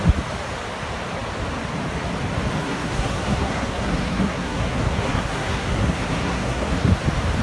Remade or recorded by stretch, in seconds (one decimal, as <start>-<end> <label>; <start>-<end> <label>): 0.0-2.6 recorded; 2.6-7.0 remade; 7.0-7.4 recorded